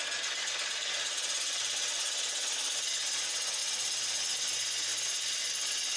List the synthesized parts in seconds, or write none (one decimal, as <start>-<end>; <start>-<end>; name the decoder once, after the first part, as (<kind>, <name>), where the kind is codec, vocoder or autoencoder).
3.6-4.2 (vocoder, BigVGAN v2); 4.9-5.5